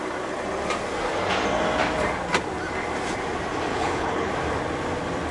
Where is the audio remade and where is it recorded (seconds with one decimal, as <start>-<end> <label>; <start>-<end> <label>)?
0.0-3.7 recorded; 3.7-4.3 remade; 4.3-5.3 recorded